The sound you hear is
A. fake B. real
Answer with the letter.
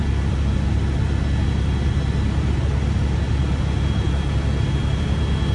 B